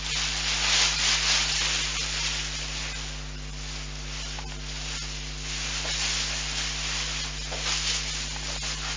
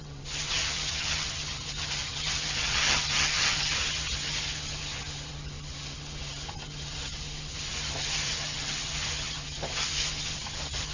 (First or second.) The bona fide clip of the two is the first